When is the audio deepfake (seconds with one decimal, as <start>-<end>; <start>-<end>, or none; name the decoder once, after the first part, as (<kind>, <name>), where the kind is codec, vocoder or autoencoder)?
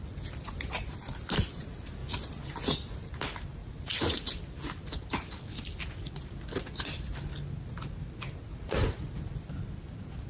3.6-4.3 (vocoder, Vocos); 8.5-9.2